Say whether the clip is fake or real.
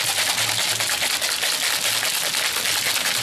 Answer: real